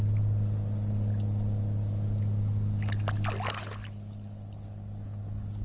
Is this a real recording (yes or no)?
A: yes